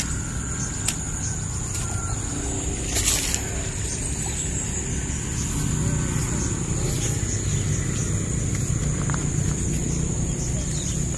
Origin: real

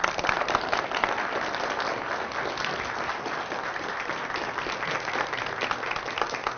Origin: real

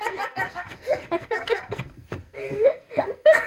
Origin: fake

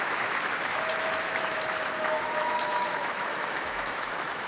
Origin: fake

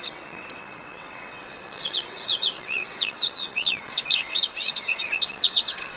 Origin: fake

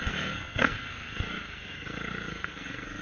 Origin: fake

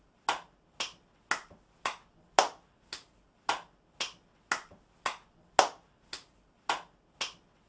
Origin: real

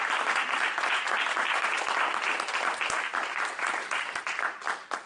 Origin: real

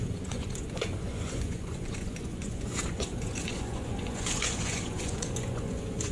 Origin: fake